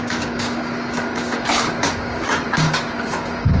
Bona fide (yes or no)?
no